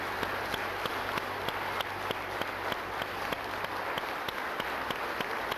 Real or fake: real